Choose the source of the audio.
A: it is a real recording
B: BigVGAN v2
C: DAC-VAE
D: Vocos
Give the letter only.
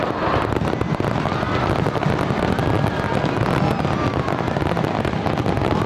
A